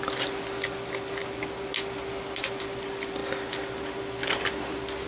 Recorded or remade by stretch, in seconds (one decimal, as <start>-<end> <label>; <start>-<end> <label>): 0.0-5.1 recorded